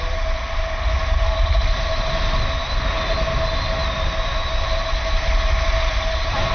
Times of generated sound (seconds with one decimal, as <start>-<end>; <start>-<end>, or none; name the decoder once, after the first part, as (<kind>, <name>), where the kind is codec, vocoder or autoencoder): none